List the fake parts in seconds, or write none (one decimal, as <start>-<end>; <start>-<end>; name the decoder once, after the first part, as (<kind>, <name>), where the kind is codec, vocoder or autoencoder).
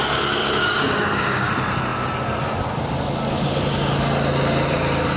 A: 0.4-1.5 (codec, DAC)